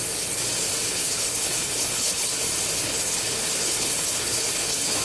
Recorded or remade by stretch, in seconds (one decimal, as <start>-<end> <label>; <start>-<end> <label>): 0.0-0.9 recorded; 0.9-2.4 remade; 2.4-2.8 recorded; 2.8-5.0 remade